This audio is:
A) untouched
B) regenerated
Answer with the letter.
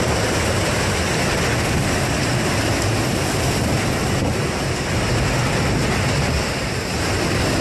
A